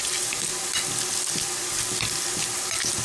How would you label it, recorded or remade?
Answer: recorded